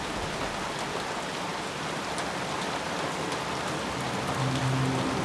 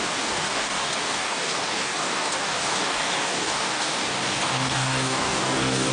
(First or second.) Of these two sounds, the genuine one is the first